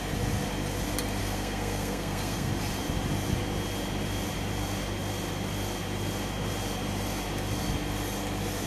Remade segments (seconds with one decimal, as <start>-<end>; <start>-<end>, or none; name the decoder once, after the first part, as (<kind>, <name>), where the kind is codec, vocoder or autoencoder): 1.2-2.5 (codec, SNAC)